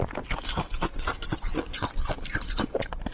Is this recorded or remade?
recorded